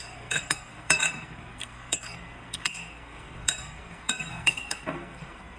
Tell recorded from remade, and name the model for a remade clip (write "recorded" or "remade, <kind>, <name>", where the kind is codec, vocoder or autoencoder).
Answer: remade, codec, SNAC